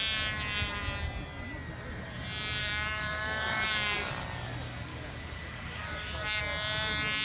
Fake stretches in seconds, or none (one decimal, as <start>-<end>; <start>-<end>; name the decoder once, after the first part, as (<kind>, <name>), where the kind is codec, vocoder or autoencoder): 2.6-4.1 (codec, DAC); 4.9-6.4